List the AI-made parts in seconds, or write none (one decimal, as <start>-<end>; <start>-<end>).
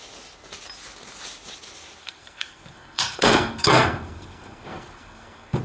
2.0-5.6